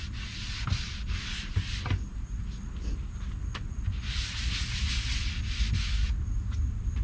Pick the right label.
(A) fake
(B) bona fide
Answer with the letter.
B